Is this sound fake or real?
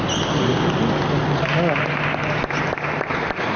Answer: real